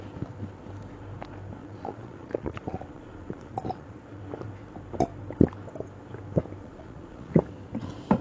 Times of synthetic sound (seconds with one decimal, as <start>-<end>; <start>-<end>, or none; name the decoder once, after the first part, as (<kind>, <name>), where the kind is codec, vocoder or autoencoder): 1.6-4.2 (vocoder, Vocos); 6.6-7.4